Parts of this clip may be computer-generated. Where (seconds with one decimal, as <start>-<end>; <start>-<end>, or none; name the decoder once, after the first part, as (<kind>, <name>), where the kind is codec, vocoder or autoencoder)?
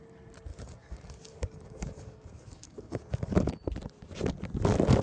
0.5-3.5 (codec, DAC)